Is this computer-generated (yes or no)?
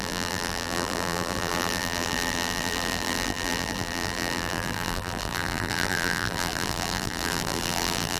yes